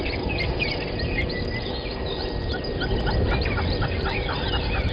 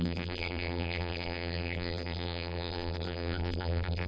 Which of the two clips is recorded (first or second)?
first